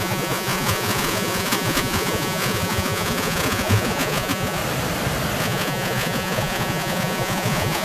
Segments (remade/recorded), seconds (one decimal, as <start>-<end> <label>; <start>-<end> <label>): 0.0-4.6 remade; 4.6-5.4 recorded; 5.4-7.8 remade